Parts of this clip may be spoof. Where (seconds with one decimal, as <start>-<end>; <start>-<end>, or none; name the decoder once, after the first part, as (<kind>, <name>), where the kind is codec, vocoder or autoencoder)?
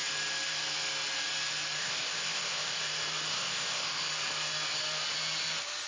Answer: 1.8-2.8 (codec, ZipCodec); 3.3-4.0